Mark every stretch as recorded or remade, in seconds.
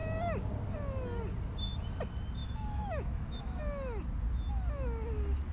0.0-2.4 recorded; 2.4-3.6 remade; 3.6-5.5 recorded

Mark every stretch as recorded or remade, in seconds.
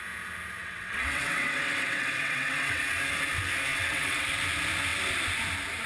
0.0-0.6 recorded; 0.6-2.8 remade; 2.8-3.7 recorded; 3.7-4.3 remade; 4.3-5.9 recorded